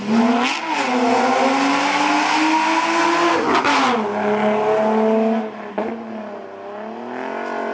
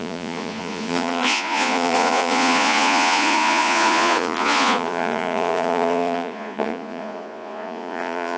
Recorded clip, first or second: first